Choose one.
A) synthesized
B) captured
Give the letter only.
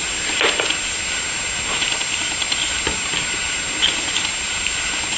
B